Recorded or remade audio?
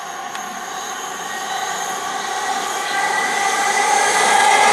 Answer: recorded